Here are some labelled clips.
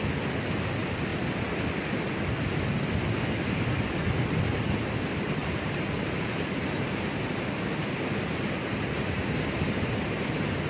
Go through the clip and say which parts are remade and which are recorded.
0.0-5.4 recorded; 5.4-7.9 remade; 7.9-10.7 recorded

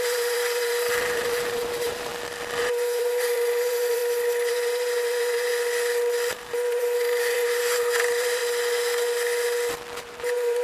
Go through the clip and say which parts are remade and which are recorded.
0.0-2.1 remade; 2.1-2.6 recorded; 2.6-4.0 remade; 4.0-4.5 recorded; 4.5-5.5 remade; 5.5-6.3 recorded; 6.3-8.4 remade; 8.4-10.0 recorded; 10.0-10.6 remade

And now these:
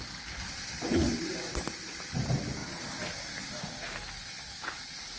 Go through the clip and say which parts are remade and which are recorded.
0.0-5.2 recorded

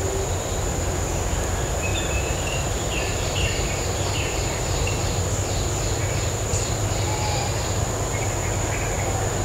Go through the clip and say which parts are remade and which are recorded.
0.0-1.9 recorded; 1.9-4.9 remade; 4.9-9.4 recorded

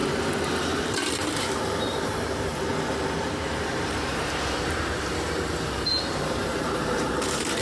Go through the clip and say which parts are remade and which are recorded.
0.0-0.6 recorded; 0.6-2.7 remade; 2.7-3.2 recorded; 3.2-7.6 remade

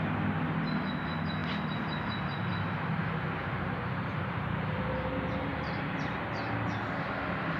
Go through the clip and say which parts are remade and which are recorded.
0.0-1.4 recorded; 1.4-2.1 remade; 2.1-3.4 recorded; 3.4-4.7 remade; 4.7-5.5 recorded; 5.5-6.3 remade; 6.3-7.6 recorded

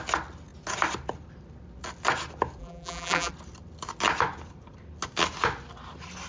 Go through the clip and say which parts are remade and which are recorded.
0.0-2.6 recorded; 2.6-3.3 remade; 3.3-6.3 recorded